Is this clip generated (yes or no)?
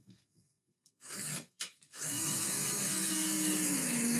yes